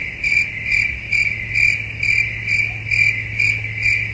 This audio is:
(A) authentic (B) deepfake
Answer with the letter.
A